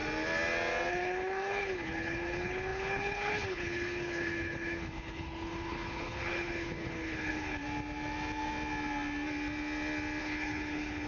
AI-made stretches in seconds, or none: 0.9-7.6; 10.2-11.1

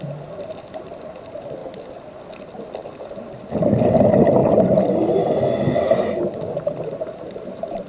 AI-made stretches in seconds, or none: 6.9-7.9

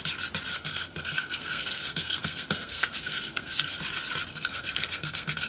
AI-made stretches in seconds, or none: 0.5-3.8; 4.3-5.5

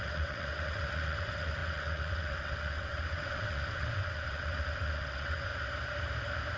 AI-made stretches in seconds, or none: 0.0-5.5

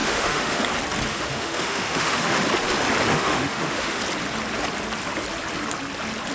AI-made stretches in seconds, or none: 0.0-0.6; 1.1-2.4; 3.1-4.0

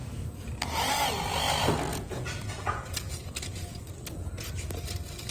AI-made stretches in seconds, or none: 1.9-3.8

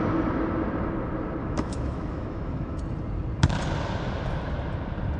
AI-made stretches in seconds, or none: 1.4-2.8

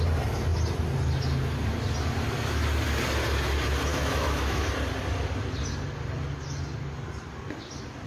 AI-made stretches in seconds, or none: 3.9-4.7